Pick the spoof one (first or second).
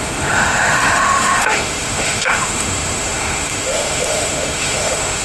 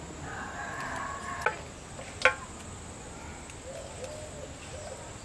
first